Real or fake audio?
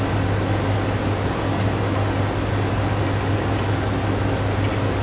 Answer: real